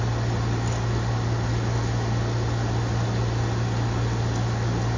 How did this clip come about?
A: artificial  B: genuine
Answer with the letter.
B